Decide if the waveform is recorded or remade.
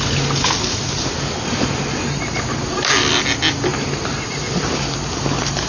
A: recorded